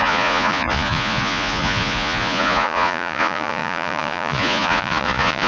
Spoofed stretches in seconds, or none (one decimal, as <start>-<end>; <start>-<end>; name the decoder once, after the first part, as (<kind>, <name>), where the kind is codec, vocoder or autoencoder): 0.0-5.5 (vocoder, Vocos)